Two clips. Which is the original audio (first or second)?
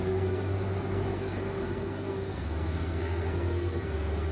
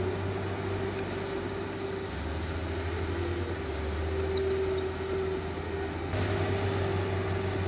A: second